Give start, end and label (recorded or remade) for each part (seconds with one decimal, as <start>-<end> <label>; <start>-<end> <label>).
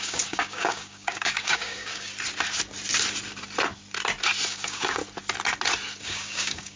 0.0-2.1 remade; 2.1-4.5 recorded; 4.5-5.0 remade; 5.0-6.0 recorded; 6.0-6.8 remade